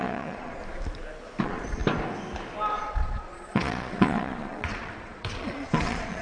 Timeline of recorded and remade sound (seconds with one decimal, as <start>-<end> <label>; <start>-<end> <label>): 0.0-0.6 remade; 0.6-1.4 recorded; 1.4-1.8 remade; 1.8-2.8 recorded; 2.8-6.2 remade